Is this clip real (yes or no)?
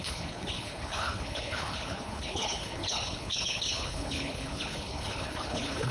no